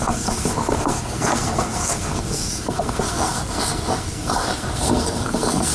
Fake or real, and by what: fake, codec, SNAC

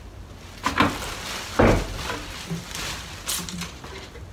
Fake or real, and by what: real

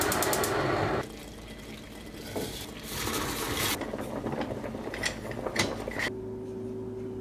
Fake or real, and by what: real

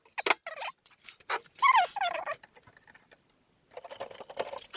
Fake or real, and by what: real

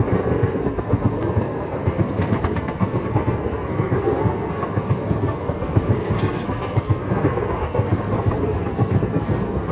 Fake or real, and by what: fake, codec, SNAC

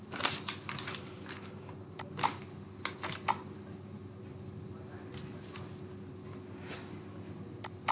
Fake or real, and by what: real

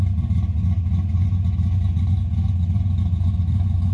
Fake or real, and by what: real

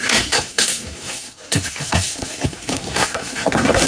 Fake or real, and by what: fake, codec, SNAC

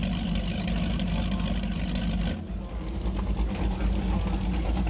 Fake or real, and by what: real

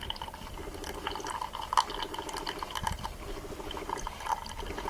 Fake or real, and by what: real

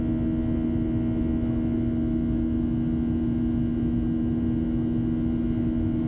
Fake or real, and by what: real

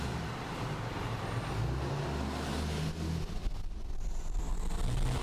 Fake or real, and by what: real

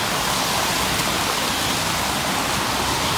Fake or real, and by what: real